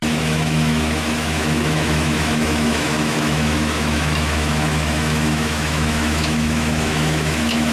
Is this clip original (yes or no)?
no